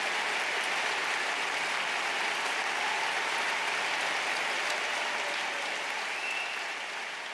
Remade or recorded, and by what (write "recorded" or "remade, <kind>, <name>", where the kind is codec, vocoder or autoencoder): recorded